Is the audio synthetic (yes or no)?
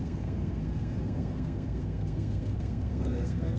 yes